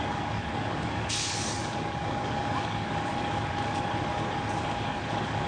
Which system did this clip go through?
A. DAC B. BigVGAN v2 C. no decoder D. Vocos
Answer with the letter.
A